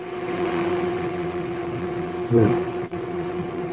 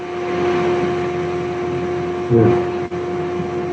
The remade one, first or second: first